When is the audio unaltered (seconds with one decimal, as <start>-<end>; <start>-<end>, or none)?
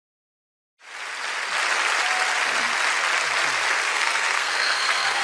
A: 0.0-3.9